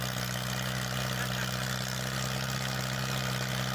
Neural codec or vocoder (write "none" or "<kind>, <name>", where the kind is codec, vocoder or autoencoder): none